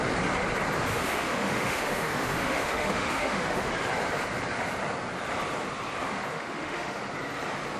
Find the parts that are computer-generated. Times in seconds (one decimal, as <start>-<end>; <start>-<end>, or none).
0.9-3.7; 6.3-7.0